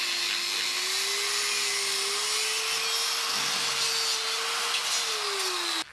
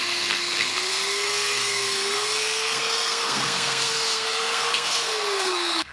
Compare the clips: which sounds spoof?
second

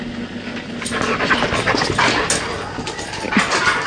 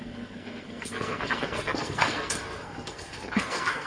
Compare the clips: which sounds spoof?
second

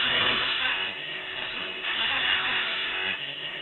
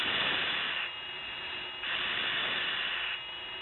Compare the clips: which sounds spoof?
first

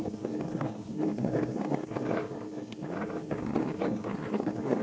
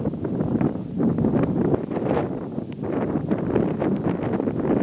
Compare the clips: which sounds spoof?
first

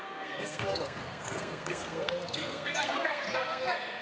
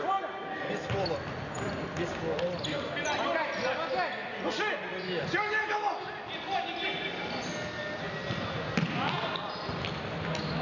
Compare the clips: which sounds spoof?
first